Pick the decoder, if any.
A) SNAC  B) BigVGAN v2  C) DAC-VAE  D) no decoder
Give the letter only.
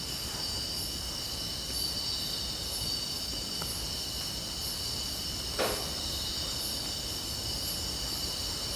D